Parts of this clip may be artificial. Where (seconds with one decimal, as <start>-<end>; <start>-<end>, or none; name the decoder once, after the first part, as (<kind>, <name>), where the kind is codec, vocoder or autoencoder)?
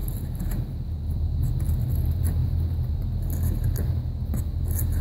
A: none